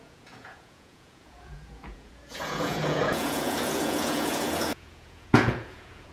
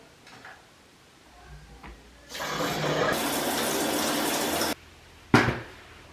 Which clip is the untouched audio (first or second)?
second